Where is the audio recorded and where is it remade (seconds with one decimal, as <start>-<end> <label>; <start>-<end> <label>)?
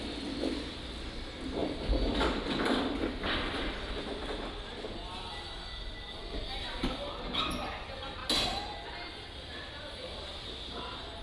0.0-11.2 recorded